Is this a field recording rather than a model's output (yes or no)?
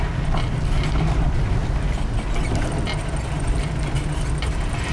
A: yes